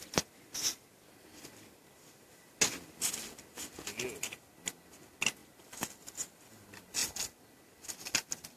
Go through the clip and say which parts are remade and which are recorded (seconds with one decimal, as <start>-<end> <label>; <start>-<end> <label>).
0.0-8.6 recorded